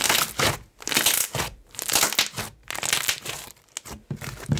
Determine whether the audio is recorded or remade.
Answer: recorded